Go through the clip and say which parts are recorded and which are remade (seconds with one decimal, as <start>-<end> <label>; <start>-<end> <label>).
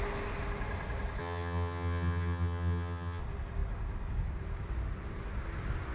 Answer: 0.0-1.2 recorded; 1.2-3.2 remade; 3.2-5.9 recorded